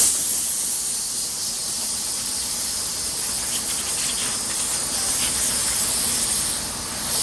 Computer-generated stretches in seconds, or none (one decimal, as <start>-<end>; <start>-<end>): 1.6-3.3